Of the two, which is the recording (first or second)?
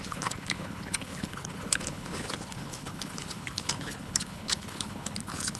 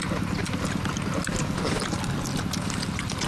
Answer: second